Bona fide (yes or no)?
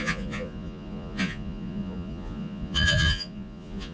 no